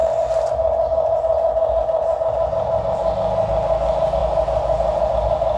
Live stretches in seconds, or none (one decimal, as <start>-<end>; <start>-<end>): 0.0-4.2; 5.1-5.6